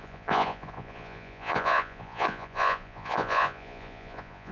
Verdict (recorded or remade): remade